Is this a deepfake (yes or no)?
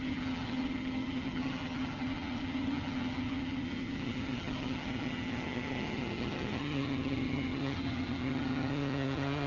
yes